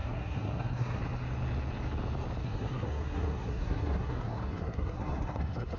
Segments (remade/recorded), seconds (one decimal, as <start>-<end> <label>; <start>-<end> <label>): 0.0-1.0 remade; 1.0-2.4 recorded; 2.4-5.8 remade